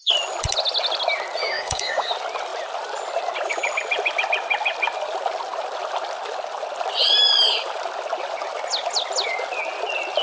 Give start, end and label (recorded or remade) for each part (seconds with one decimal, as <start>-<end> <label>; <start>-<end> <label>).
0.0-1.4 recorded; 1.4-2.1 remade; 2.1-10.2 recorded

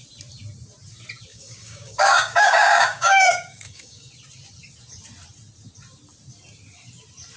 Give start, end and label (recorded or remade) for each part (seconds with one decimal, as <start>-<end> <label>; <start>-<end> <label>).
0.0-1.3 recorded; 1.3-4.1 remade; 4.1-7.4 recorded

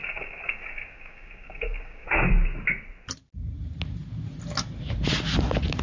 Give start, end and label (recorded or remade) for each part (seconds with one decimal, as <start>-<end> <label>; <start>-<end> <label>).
0.0-2.3 remade; 2.3-5.8 recorded

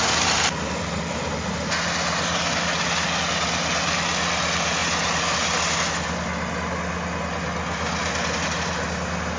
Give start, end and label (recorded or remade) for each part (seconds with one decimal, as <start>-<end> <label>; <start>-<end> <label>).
0.0-9.4 recorded

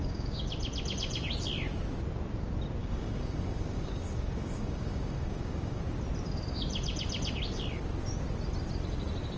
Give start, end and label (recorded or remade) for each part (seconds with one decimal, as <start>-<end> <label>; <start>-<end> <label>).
0.0-0.5 remade; 0.5-2.8 recorded; 2.8-5.8 remade; 5.8-9.4 recorded